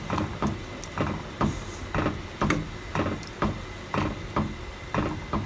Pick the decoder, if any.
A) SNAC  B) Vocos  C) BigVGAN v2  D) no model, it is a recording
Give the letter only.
D